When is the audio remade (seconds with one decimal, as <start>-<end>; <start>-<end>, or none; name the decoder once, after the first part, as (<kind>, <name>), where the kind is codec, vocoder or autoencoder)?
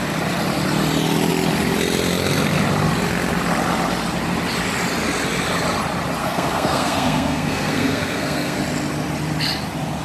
6.2-8.6 (codec, SNAC)